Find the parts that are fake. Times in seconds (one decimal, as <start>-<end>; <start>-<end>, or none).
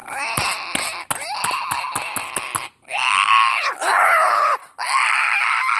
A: 3.5-4.6